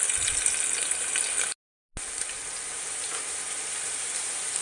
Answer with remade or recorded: recorded